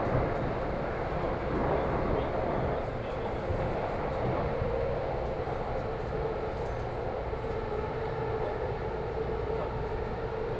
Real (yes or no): yes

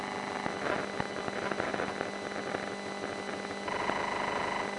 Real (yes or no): yes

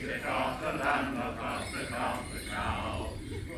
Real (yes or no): yes